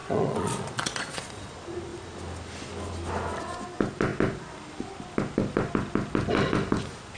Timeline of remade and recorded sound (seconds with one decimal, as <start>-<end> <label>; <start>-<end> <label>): 0.0-1.5 remade; 1.5-7.2 recorded